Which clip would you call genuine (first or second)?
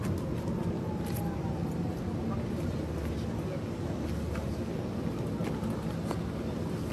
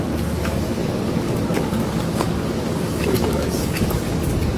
first